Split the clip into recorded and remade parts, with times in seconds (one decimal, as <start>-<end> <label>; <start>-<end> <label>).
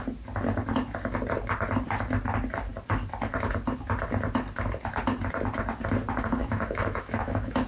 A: 0.0-6.4 recorded; 6.4-7.7 remade